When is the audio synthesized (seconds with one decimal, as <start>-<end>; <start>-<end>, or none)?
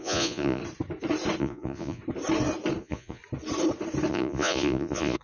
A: 0.0-0.6; 1.4-2.0; 2.8-3.2; 4.1-5.2